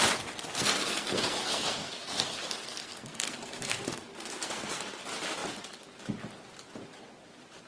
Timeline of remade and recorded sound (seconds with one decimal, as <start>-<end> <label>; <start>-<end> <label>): 0.0-0.5 recorded; 0.5-5.0 remade; 5.0-7.7 recorded